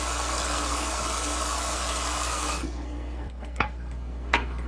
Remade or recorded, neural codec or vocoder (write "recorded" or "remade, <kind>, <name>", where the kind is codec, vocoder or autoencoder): remade, codec, SNAC